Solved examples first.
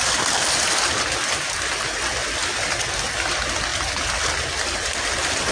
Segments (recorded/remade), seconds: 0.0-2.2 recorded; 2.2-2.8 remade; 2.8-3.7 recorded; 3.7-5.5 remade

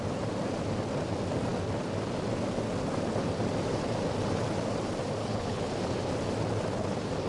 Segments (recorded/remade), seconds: 0.0-5.2 recorded; 5.2-5.7 remade; 5.7-7.3 recorded

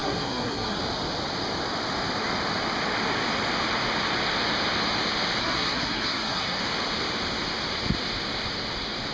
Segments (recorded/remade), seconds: 0.0-0.8 remade; 0.8-5.4 recorded; 5.4-6.6 remade; 6.6-9.1 recorded

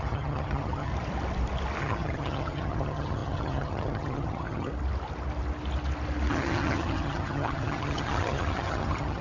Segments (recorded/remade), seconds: 0.0-0.9 remade; 0.9-1.8 recorded; 1.8-4.7 remade; 4.7-6.3 recorded; 6.3-9.2 remade